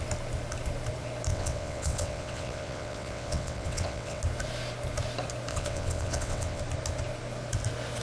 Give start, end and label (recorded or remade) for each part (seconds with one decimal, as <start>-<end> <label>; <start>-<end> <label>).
0.0-1.3 recorded; 1.3-4.2 remade; 4.2-5.5 recorded; 5.5-6.6 remade; 6.6-8.0 recorded